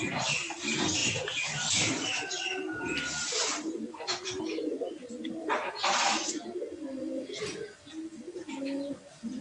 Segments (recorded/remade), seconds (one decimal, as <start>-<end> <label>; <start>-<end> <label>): 0.0-1.0 recorded; 1.0-4.4 remade; 4.4-9.4 recorded